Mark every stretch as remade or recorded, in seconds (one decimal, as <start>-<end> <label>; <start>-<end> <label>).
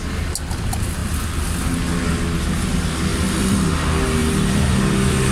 0.0-3.1 recorded; 3.1-3.7 remade; 3.7-4.2 recorded; 4.2-5.3 remade